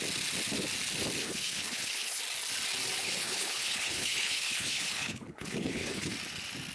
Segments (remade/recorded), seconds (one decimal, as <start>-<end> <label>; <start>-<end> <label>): 0.0-1.2 recorded; 1.2-2.2 remade; 2.2-3.0 recorded; 3.0-6.1 remade; 6.1-6.7 recorded